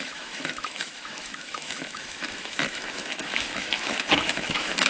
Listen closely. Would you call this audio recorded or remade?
remade